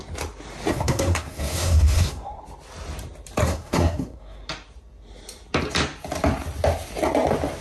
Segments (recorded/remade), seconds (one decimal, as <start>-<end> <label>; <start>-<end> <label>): 0.0-0.7 recorded; 0.7-2.4 remade; 2.4-3.4 recorded; 3.4-4.5 remade; 4.5-7.6 recorded